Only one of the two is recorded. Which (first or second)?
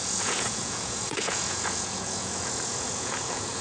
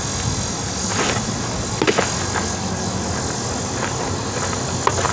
second